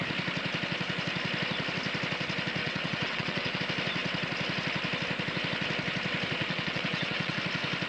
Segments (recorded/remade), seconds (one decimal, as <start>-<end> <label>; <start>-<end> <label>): 0.0-2.6 recorded; 2.6-3.6 remade; 3.6-6.4 recorded; 6.4-7.4 remade; 7.4-7.9 recorded